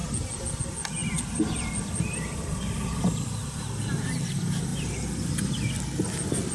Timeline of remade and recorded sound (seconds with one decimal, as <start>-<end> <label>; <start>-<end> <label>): 0.0-1.0 recorded; 1.0-4.0 remade; 4.0-4.7 recorded; 4.7-5.8 remade; 5.8-6.5 recorded